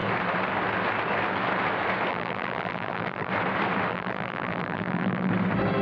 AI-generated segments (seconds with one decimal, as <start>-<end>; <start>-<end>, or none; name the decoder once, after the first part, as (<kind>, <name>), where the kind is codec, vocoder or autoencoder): 2.1-3.3 (vocoder, BigVGAN v2); 3.9-5.3